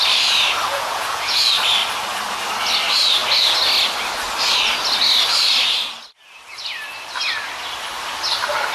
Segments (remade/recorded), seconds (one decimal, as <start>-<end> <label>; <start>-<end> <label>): 0.0-0.7 recorded; 0.7-1.4 remade; 1.4-8.7 recorded